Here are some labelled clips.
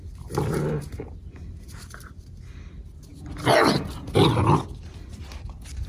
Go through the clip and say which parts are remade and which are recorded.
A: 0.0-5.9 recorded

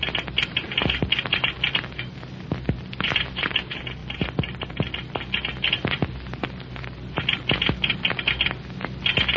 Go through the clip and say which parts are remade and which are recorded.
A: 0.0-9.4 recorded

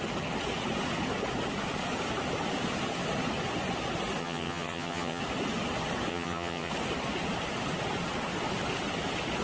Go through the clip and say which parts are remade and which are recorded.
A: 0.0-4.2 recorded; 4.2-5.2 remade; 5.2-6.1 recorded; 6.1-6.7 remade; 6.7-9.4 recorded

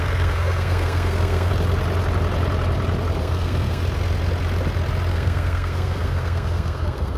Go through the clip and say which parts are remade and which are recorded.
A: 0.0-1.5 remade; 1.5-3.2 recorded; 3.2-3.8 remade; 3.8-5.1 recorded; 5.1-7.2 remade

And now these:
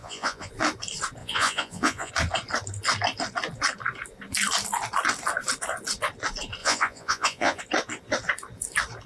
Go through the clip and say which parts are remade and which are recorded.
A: 0.0-0.5 remade; 0.5-1.2 recorded; 1.2-2.1 remade; 2.1-6.6 recorded; 6.6-7.6 remade; 7.6-9.1 recorded

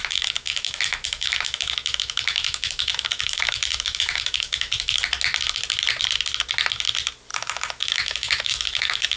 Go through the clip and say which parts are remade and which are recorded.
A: 0.0-5.0 remade; 5.0-7.3 recorded; 7.3-9.2 remade

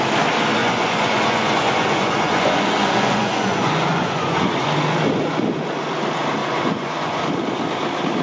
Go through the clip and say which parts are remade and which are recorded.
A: 0.0-0.6 recorded; 0.6-4.7 remade; 4.7-6.4 recorded; 6.4-7.2 remade; 7.2-8.2 recorded

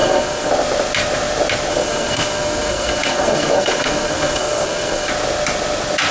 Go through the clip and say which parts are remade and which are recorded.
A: 0.0-0.5 remade; 0.5-1.7 recorded; 1.7-5.1 remade; 5.1-6.1 recorded